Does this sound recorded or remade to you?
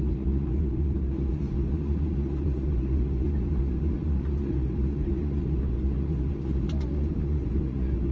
remade